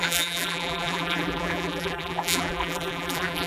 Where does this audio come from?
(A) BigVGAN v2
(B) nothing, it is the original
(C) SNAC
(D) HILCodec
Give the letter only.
A